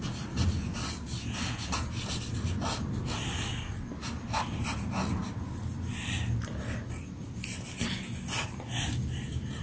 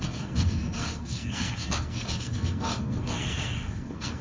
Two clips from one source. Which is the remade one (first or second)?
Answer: second